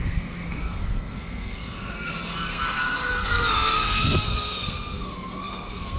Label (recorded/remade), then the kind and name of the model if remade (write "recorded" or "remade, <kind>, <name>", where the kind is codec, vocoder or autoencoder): remade, codec, SNAC